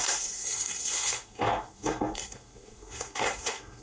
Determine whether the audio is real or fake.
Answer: fake